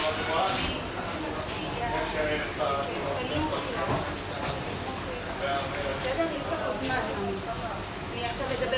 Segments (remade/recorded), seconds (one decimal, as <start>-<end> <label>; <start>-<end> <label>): 0.0-8.8 recorded